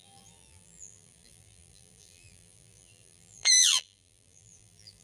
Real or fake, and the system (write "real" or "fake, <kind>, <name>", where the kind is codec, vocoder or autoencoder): fake, vocoder, BigVGAN v2